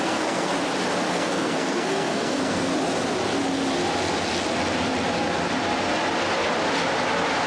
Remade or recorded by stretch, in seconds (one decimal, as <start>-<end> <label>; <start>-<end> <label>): 0.0-0.5 remade; 0.5-1.1 recorded; 1.1-2.7 remade; 2.7-7.5 recorded